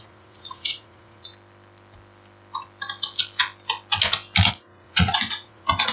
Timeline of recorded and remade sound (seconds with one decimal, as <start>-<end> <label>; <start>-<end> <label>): 0.0-1.3 remade; 1.3-4.5 recorded; 4.5-5.9 remade

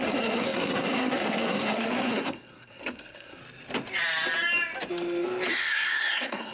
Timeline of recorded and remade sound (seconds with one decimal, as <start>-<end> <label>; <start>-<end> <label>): 0.0-3.4 remade; 3.4-5.5 recorded; 5.5-6.5 remade

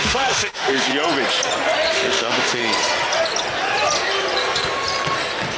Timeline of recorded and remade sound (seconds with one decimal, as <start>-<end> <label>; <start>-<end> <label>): 0.0-0.9 remade; 0.9-1.9 recorded; 1.9-2.6 remade; 2.6-5.6 recorded

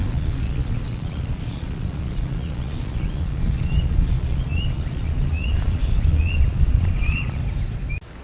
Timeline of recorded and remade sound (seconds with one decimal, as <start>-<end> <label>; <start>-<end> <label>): 0.0-7.4 remade; 7.4-8.2 recorded

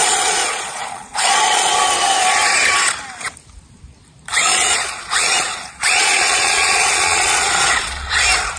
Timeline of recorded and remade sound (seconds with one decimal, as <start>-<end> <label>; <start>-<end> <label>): 0.0-1.7 remade; 1.7-4.3 recorded; 4.3-8.2 remade; 8.2-8.6 recorded

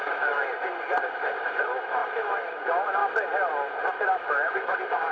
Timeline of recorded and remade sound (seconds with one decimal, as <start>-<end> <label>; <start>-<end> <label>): 0.0-0.4 remade; 0.4-1.6 recorded; 1.6-3.0 remade; 3.0-3.9 recorded; 3.9-5.1 remade

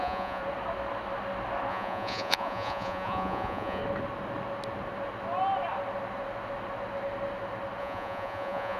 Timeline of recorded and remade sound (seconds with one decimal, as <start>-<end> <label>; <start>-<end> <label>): 0.0-0.4 remade; 0.4-1.7 recorded; 1.7-3.8 remade; 3.8-7.8 recorded; 7.8-8.8 remade